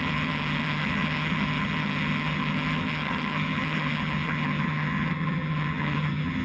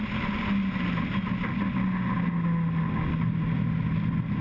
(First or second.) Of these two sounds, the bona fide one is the second